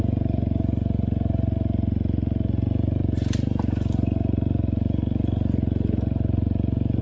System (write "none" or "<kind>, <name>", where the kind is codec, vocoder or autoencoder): none